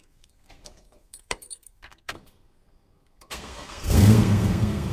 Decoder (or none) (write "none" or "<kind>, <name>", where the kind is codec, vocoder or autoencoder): codec, SNAC